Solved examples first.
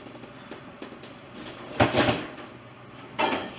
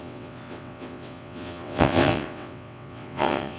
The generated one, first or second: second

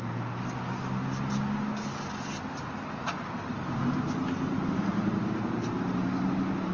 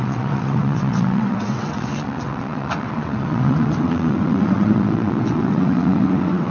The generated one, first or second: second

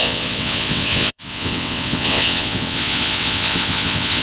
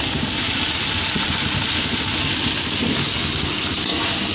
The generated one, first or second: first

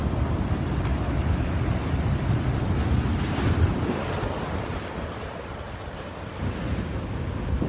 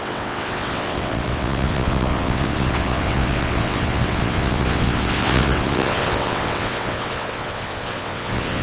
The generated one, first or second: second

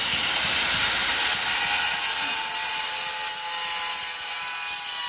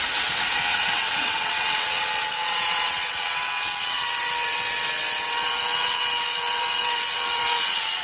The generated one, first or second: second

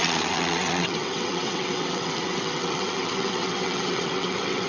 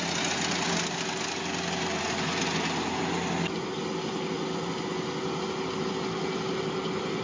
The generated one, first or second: first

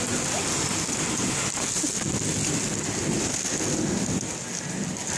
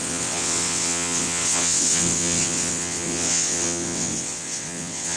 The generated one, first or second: second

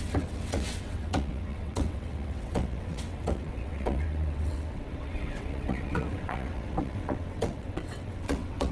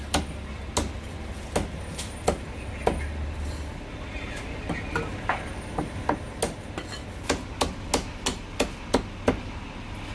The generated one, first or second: first